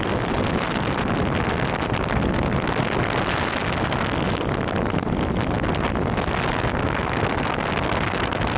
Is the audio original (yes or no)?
yes